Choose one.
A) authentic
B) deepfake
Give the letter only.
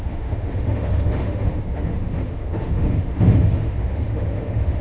B